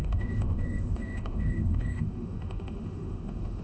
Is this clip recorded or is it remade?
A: remade